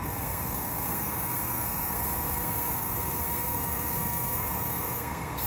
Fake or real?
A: fake